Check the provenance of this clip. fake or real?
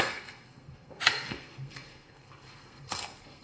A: fake